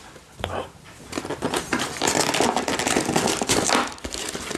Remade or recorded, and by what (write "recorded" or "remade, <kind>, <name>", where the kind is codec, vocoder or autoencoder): recorded